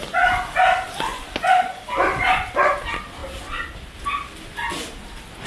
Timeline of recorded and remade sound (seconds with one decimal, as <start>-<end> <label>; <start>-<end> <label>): 0.0-1.1 recorded; 1.1-1.8 remade; 1.8-5.5 recorded